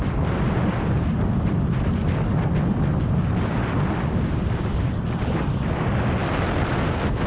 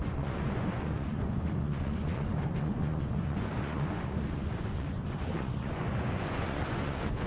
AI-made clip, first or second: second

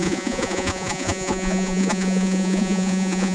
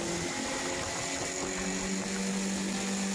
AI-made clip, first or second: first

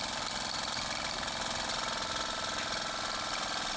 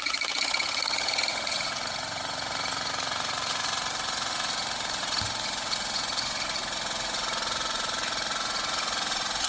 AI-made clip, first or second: second